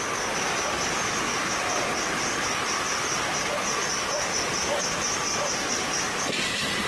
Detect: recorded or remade recorded